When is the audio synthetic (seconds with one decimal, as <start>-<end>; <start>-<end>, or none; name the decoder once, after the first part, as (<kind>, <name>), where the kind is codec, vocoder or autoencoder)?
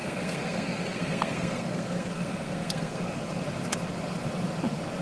0.0-3.0 (codec, SNAC)